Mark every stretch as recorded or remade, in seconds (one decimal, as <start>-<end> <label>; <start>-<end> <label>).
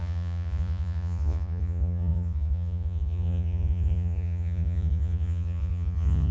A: 0.0-6.3 remade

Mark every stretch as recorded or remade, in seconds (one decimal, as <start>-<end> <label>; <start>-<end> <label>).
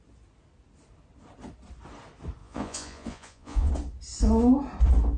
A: 0.0-2.4 recorded; 2.4-3.7 remade; 3.7-5.2 recorded